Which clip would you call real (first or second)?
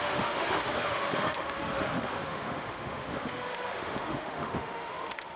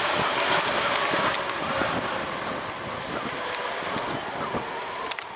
second